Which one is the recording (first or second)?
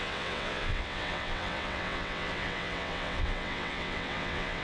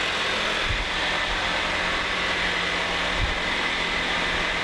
second